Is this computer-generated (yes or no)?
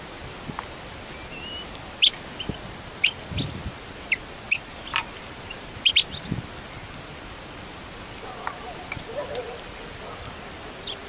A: no